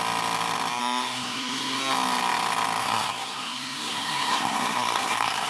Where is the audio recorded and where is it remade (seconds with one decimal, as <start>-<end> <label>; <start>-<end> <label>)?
0.0-0.8 recorded; 0.8-1.8 remade; 1.8-2.8 recorded; 2.8-5.5 remade